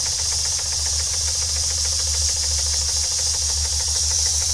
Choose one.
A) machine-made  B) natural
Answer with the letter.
B